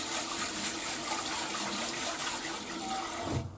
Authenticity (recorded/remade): recorded